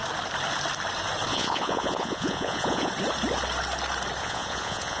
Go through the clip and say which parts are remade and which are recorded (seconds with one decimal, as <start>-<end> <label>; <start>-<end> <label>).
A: 0.0-1.3 recorded; 1.3-2.9 remade; 2.9-4.2 recorded; 4.2-5.0 remade